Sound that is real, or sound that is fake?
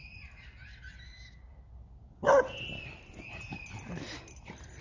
real